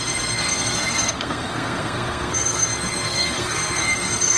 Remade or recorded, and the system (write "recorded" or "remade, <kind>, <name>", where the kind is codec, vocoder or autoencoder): remade, codec, SNAC